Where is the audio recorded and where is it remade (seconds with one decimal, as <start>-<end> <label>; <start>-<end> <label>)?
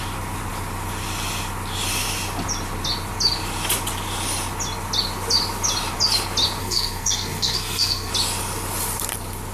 0.0-6.6 recorded; 6.6-8.1 remade; 8.1-9.5 recorded